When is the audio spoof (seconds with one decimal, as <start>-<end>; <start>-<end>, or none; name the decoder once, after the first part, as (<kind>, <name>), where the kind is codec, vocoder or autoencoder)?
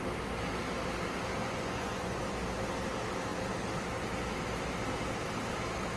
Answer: 1.4-2.2 (vocoder, Vocos)